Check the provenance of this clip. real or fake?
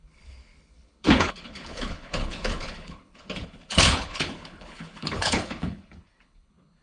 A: fake